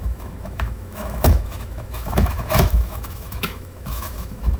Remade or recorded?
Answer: remade